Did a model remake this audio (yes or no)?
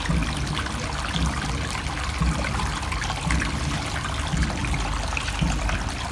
no